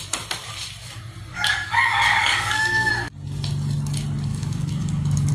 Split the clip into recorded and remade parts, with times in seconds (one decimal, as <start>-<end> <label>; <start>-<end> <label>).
0.0-1.3 recorded; 1.3-2.9 remade; 2.9-4.3 recorded; 4.3-5.3 remade